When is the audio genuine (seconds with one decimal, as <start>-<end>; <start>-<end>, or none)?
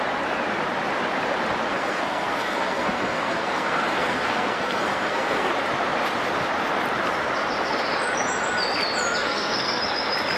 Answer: 0.0-1.7; 5.5-9.2; 9.8-10.4